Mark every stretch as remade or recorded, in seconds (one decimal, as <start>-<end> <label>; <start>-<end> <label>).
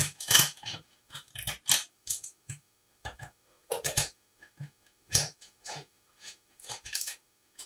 0.0-1.3 remade; 1.3-1.9 recorded; 1.9-7.7 remade